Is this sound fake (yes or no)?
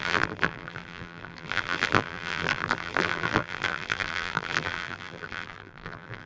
yes